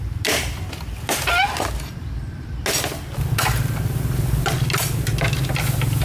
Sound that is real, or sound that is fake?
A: real